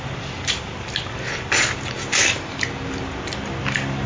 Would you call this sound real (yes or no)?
yes